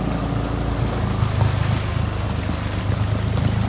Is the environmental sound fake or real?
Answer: real